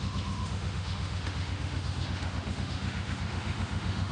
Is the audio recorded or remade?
remade